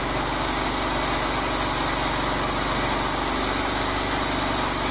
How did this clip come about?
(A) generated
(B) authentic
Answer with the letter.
B